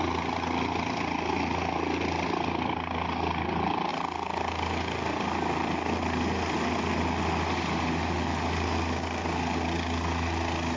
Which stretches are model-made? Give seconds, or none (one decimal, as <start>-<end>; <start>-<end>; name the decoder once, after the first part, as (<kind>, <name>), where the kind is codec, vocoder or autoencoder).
none